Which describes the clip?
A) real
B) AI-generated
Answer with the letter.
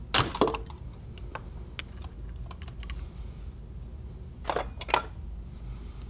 A